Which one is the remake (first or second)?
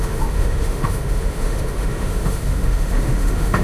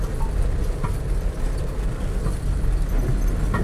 first